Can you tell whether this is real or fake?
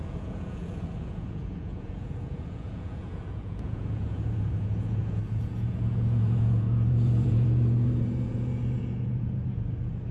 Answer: fake